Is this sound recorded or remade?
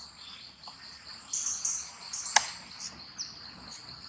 recorded